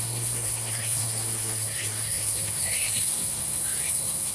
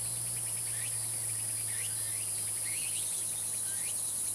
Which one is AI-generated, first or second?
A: first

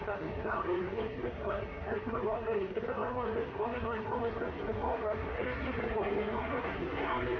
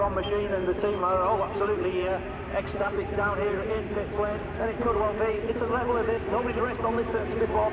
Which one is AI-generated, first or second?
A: first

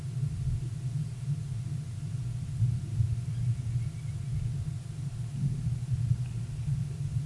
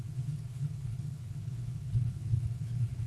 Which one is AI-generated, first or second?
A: second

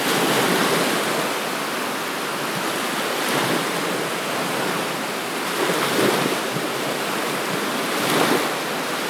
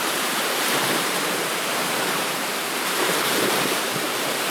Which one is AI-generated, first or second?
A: second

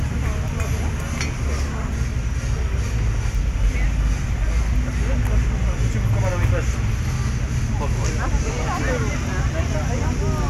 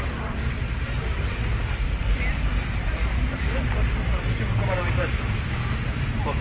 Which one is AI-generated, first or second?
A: second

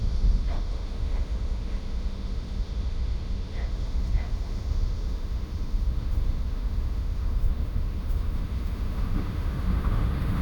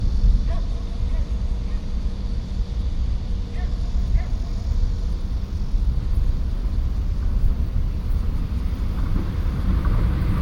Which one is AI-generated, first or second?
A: first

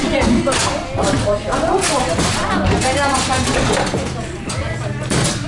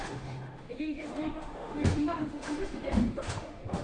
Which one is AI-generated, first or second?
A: second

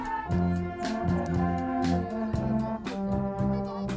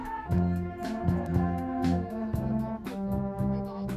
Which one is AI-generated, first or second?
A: second